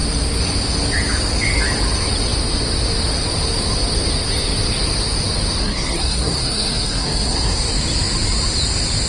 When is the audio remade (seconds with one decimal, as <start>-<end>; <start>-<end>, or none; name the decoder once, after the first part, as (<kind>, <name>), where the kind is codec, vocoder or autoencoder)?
5.6-7.7 (codec, SNAC)